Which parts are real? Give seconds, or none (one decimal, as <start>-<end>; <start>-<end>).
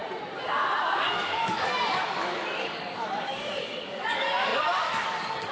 0.0-0.8